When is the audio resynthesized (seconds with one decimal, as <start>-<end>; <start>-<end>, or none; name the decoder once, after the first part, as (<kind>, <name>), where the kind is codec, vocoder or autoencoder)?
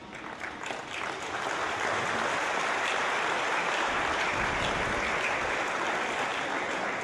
none